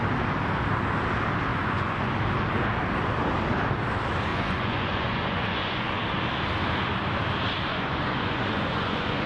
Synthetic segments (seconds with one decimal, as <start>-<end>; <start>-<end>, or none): 1.5-2.1; 4.3-6.0; 7.7-9.3